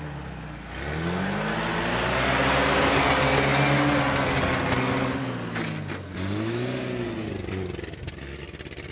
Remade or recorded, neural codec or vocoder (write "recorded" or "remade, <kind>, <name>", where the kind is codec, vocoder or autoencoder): recorded